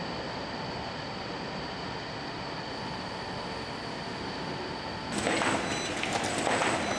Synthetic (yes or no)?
no